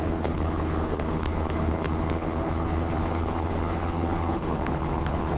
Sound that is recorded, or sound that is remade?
remade